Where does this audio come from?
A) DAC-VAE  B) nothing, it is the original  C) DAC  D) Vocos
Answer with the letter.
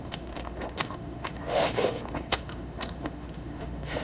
A